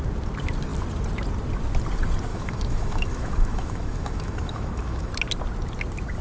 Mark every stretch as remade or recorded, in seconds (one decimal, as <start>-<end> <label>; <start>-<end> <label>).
0.0-2.3 recorded; 2.3-5.1 remade; 5.1-6.2 recorded